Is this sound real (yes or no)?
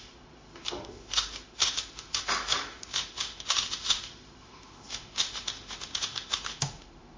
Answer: no